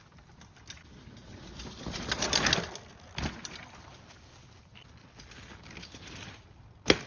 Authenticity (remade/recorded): recorded